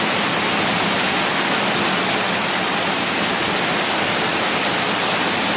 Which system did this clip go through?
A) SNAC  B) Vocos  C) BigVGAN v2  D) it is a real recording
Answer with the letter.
D